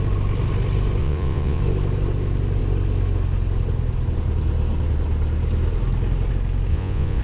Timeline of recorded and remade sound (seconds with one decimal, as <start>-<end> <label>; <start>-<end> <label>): 0.0-1.0 recorded; 1.0-1.6 remade; 1.6-6.7 recorded; 6.7-7.2 remade